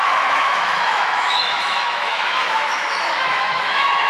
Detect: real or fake fake